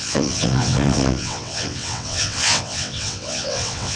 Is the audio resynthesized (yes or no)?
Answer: yes